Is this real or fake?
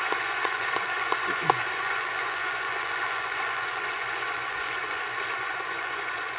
fake